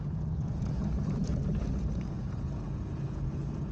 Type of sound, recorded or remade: remade